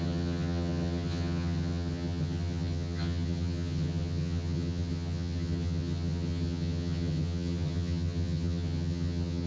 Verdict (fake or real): fake